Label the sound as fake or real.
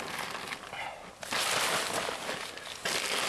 real